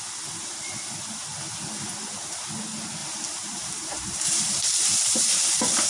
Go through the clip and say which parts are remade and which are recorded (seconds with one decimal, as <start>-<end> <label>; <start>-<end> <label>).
0.0-3.0 recorded; 3.0-5.4 remade; 5.4-5.9 recorded